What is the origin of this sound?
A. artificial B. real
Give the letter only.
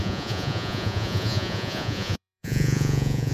A